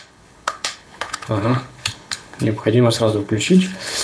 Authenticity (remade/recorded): remade